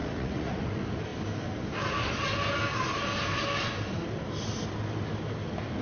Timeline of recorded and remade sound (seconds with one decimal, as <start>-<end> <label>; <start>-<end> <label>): 0.0-0.6 remade; 0.6-5.8 recorded